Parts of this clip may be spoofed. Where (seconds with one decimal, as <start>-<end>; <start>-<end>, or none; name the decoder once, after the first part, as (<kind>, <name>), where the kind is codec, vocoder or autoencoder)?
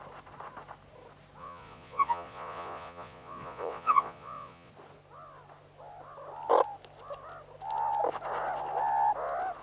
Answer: 1.4-4.7 (vocoder, Vocos)